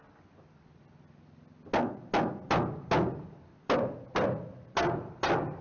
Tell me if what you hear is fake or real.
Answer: real